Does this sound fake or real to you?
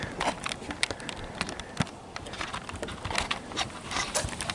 real